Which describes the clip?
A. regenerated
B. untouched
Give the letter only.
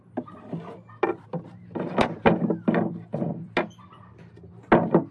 B